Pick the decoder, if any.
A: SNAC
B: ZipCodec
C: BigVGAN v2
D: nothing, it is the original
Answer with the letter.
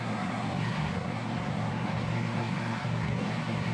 A